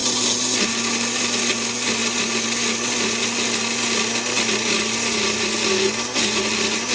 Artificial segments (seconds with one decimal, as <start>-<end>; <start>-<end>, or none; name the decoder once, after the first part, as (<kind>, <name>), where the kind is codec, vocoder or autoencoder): none